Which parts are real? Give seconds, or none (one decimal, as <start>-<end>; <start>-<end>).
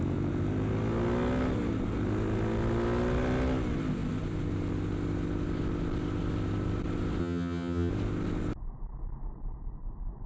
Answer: 0.0-7.2; 7.9-10.3